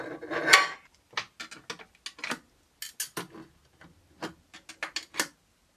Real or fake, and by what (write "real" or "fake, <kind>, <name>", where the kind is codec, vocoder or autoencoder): real